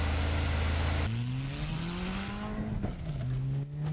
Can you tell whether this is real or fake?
real